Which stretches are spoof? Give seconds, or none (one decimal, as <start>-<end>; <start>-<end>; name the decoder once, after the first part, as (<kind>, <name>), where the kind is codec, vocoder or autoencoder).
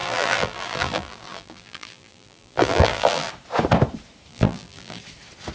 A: 0.0-3.3 (vocoder, BigVGAN v2); 4.3-5.0